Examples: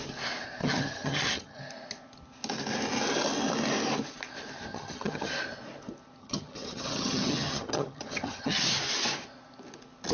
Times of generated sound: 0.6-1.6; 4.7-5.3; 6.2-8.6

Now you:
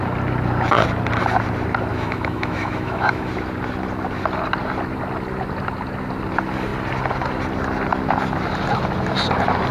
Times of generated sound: 1.9-3.3

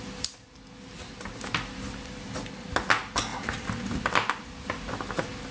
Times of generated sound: none

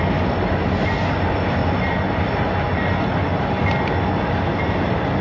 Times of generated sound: none